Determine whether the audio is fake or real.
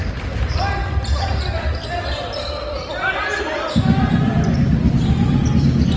real